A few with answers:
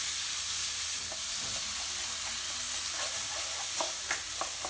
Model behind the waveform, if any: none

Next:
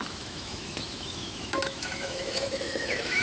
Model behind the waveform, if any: autoencoder, DAC-VAE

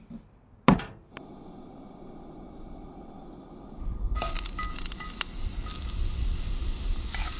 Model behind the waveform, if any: none